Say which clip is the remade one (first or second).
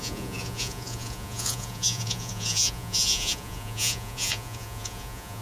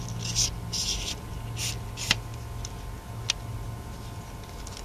first